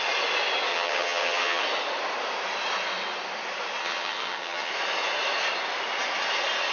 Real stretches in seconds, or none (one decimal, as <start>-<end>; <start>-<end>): 0.0-0.7; 1.6-3.8; 4.7-6.7